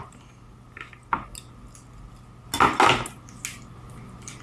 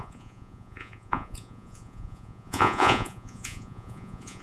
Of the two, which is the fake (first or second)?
second